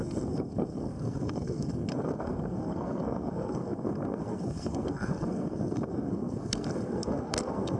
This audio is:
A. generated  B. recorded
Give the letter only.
A